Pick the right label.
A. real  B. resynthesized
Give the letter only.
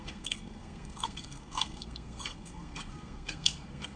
B